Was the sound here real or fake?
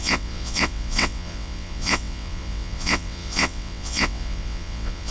fake